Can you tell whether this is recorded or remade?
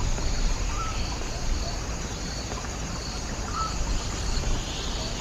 remade